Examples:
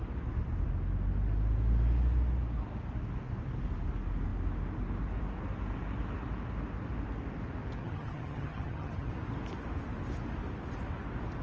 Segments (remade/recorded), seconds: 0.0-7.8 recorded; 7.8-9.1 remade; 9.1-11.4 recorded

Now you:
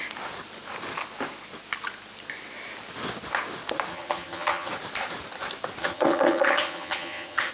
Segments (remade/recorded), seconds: 0.0-3.9 recorded; 3.9-4.7 remade; 4.7-5.8 recorded; 5.8-7.5 remade

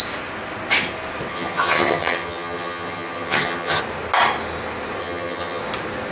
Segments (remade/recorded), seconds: 0.0-1.3 recorded; 1.3-3.8 remade; 3.8-5.0 recorded; 5.0-5.6 remade; 5.6-6.1 recorded

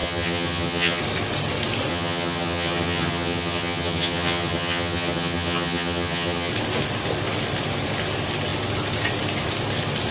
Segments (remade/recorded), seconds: 0.0-1.0 remade; 1.0-1.9 recorded; 1.9-6.5 remade; 6.5-10.1 recorded

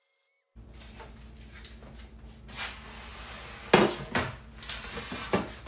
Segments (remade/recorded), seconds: 0.0-5.7 recorded

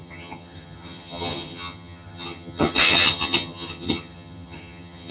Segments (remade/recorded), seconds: 0.0-5.1 remade